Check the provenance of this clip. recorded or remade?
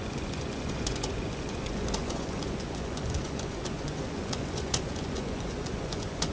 remade